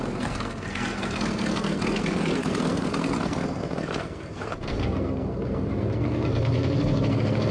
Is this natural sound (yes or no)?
no